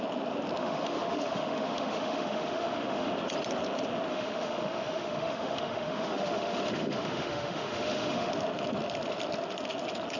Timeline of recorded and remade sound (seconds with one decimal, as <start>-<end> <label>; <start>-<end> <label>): 0.0-0.6 recorded; 0.6-3.1 remade; 3.1-4.1 recorded; 4.1-8.3 remade; 8.3-10.2 recorded